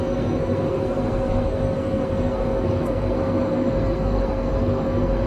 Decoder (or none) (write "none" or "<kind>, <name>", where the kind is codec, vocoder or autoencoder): codec, SNAC